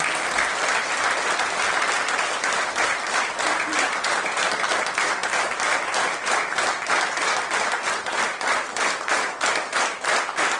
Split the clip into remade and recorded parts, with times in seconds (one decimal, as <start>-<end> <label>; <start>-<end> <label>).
0.0-10.6 recorded